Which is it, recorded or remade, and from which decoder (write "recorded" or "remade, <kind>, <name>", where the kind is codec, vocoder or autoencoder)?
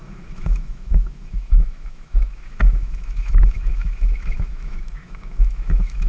remade, autoencoder, DAC-VAE